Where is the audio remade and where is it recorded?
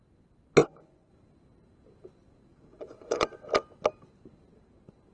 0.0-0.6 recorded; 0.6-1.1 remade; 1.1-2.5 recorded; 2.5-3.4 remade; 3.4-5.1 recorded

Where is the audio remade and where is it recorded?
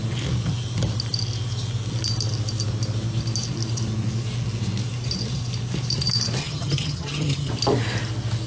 0.0-6.4 recorded; 6.4-7.5 remade; 7.5-8.5 recorded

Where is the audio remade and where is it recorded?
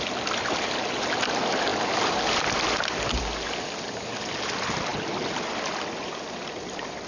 0.0-7.1 recorded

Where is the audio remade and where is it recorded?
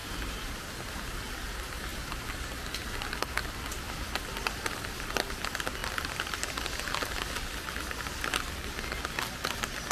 0.0-1.3 remade; 1.3-9.9 recorded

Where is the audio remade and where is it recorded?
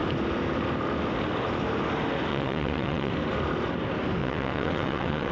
0.0-2.3 recorded; 2.3-3.1 remade; 3.1-4.2 recorded; 4.2-5.3 remade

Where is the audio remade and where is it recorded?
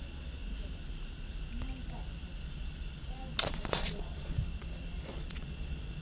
0.0-0.4 remade; 0.4-2.4 recorded; 2.4-3.0 remade; 3.0-3.5 recorded; 3.5-4.4 remade; 4.4-5.0 recorded; 5.0-6.0 remade